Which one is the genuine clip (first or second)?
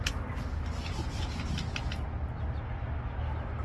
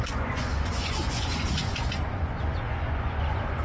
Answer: first